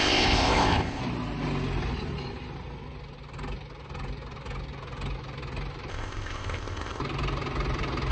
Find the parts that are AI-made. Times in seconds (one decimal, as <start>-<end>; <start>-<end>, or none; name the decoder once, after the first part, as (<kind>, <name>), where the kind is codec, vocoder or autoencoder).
0.0-1.0 (codec, ZipCodec); 5.9-7.0

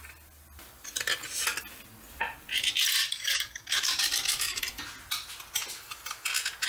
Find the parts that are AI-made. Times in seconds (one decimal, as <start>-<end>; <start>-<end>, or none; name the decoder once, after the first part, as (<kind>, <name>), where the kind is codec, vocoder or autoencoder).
3.0-4.6 (codec, DAC)

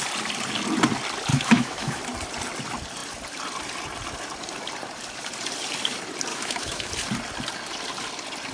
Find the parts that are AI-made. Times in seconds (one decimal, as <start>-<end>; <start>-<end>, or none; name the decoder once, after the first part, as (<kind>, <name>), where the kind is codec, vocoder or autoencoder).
1.3-2.0 (autoencoder, DAC-VAE); 6.3-6.9